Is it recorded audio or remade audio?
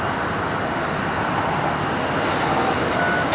recorded